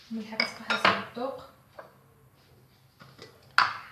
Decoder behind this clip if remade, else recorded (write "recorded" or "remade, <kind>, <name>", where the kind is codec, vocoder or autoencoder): recorded